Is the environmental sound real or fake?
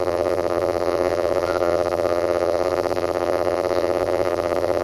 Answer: fake